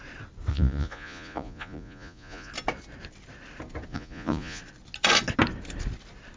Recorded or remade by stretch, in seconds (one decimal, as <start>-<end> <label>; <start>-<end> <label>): 0.0-0.5 recorded; 0.5-2.5 remade; 2.5-3.9 recorded; 3.9-4.6 remade; 4.6-6.4 recorded